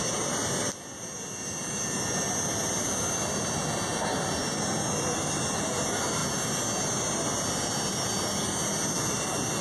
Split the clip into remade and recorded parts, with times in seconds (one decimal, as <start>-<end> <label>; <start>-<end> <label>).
0.0-9.6 remade

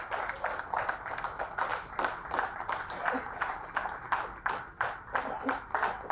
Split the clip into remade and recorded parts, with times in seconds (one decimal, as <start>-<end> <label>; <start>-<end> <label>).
0.0-1.7 recorded; 1.7-5.2 remade; 5.2-6.1 recorded

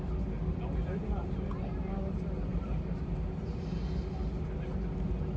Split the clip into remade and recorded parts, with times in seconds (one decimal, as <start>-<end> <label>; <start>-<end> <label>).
0.0-2.5 recorded; 2.5-3.8 remade; 3.8-5.4 recorded

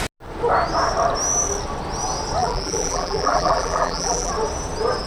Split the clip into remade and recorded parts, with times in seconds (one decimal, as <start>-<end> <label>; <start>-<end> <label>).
0.0-2.4 recorded; 2.4-4.3 remade; 4.3-5.1 recorded

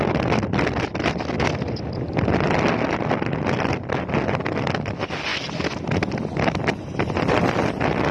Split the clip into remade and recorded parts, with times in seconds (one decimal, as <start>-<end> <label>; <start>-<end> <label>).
0.0-8.1 recorded

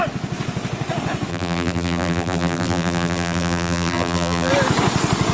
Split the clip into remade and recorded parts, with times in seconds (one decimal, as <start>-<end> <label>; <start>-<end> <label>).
0.0-1.3 recorded; 1.3-4.5 remade; 4.5-5.3 recorded

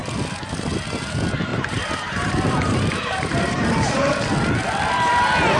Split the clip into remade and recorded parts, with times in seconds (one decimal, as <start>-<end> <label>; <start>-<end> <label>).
0.0-1.5 recorded; 1.5-4.0 remade; 4.0-5.6 recorded

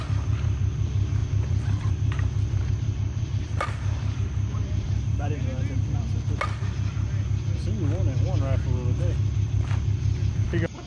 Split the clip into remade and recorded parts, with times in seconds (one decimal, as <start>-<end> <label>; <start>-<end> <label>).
0.0-5.6 remade; 5.6-10.3 recorded; 10.3-10.9 remade